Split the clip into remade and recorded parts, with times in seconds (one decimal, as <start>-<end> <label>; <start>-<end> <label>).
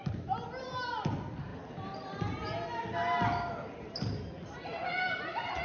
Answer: 0.0-5.6 recorded